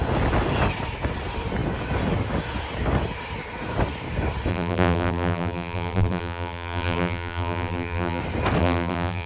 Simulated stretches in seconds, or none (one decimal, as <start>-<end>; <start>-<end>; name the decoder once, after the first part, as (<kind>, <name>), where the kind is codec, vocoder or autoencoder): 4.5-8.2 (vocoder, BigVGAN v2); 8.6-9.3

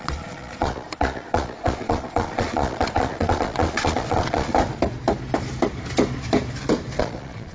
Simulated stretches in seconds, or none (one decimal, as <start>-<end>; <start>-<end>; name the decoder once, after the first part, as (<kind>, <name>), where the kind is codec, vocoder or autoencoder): 0.0-4.5 (vocoder, Vocos); 7.0-7.5

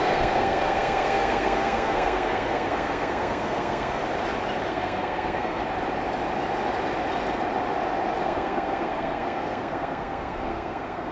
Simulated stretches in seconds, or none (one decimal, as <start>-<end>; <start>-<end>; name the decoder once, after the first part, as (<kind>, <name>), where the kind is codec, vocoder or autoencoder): 0.0-4.0 (codec, SNAC); 4.7-5.6; 8.2-11.1